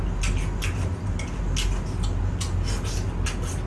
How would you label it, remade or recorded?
recorded